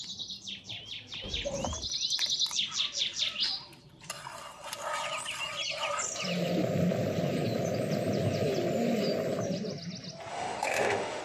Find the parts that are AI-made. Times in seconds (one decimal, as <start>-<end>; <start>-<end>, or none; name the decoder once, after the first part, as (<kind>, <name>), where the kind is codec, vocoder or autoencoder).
10.3-11.2 (autoencoder, DAC-VAE)